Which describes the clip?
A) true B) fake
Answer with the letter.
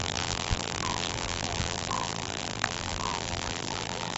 B